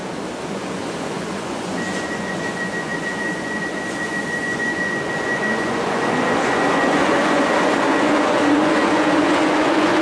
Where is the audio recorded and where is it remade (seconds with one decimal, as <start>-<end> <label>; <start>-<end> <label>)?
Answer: 0.0-0.5 recorded; 0.5-10.0 remade